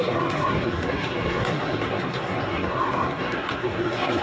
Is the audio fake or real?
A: fake